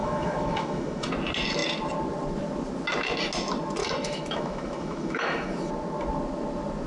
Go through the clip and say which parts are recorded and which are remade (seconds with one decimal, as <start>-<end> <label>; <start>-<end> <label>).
0.0-1.1 remade; 1.1-3.8 recorded; 3.8-5.7 remade; 5.7-6.9 recorded